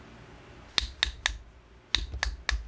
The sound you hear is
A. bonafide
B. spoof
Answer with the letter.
A